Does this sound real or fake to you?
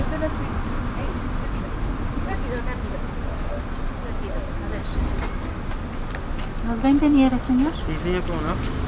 real